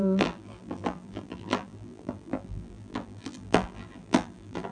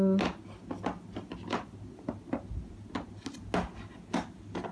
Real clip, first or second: second